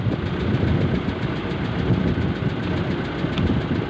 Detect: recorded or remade recorded